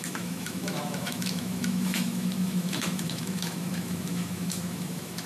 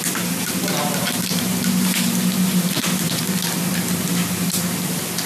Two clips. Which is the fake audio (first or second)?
first